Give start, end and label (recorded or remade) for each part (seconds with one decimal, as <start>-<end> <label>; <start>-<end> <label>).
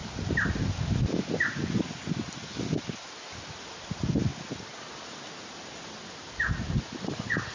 0.0-7.5 recorded